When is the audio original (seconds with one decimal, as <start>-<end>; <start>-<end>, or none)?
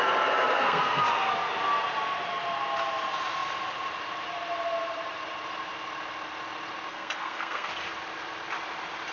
0.0-0.6; 1.3-6.9; 7.7-9.1